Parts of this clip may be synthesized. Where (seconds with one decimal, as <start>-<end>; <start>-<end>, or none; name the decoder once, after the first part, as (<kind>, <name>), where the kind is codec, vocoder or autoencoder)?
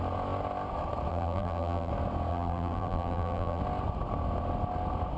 1.1-1.9 (vocoder, BigVGAN v2); 2.3-3.6